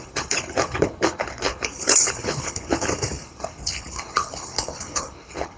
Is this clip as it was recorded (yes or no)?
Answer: no